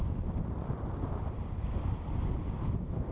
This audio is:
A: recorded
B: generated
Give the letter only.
A